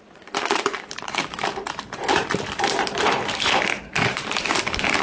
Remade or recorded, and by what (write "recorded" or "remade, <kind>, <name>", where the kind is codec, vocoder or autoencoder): remade, vocoder, BigVGAN v2